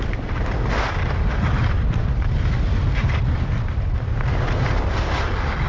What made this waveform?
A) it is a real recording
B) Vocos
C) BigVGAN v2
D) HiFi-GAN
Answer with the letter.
A